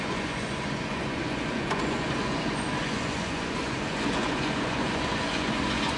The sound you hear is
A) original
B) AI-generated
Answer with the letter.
B